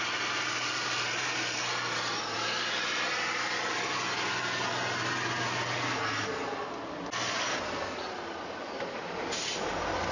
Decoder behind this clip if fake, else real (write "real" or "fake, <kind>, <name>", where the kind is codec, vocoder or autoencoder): real